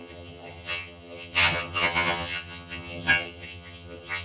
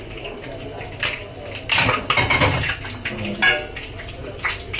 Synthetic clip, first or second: first